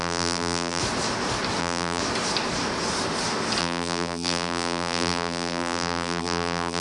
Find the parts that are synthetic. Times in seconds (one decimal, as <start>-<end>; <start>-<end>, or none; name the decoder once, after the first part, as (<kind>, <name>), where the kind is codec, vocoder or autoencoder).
0.0-0.8 (vocoder, BigVGAN v2); 1.6-2.0; 3.6-6.8